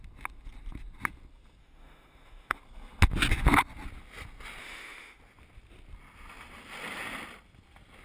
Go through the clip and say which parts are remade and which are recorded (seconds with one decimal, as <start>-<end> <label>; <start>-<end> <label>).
0.0-1.6 recorded; 1.6-2.6 remade; 2.6-4.6 recorded; 4.6-5.2 remade; 5.2-8.0 recorded